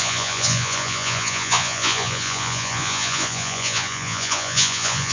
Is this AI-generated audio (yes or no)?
yes